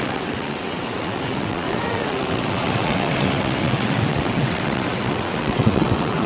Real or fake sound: fake